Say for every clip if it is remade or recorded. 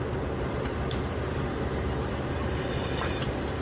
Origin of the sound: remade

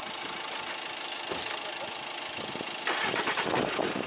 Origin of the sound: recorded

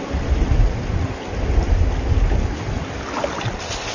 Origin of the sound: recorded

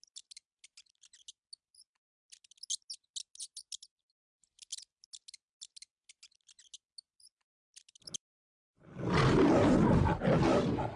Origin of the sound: recorded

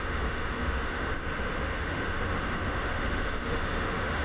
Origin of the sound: remade